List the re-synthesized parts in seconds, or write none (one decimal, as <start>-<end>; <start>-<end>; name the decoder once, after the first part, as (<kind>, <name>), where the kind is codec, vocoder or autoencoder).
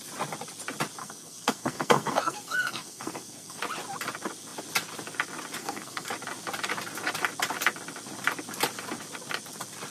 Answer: 1.0-3.6 (codec, SNAC); 5.6-6.1